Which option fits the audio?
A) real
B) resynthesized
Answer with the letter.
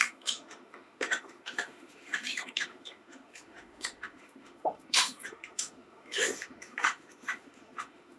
B